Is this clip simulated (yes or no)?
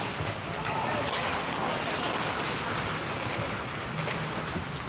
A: no